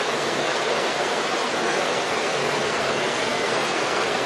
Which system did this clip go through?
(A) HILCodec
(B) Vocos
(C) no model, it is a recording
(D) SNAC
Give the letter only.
D